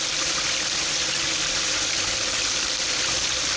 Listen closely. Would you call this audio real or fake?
real